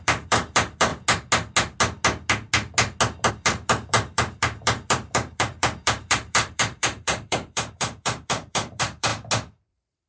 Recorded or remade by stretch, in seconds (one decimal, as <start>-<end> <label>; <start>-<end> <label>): 0.0-0.9 remade; 0.9-3.3 recorded; 3.3-9.1 remade; 9.1-9.7 recorded; 9.7-10.1 remade